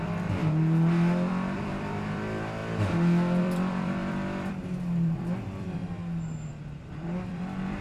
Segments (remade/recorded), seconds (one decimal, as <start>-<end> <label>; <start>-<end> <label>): 0.0-0.4 remade; 0.4-1.3 recorded; 1.3-2.6 remade; 2.6-3.4 recorded; 3.4-5.8 remade; 5.8-6.5 recorded; 6.5-7.8 remade